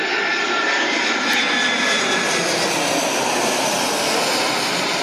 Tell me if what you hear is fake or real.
real